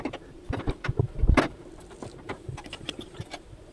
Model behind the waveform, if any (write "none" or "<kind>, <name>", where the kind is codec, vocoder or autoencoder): none